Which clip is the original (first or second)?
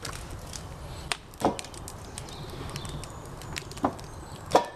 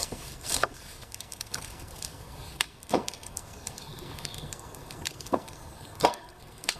first